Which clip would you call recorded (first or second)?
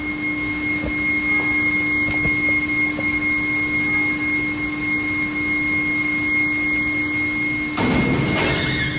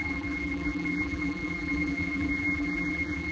first